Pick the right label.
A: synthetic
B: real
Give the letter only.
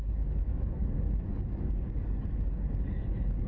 A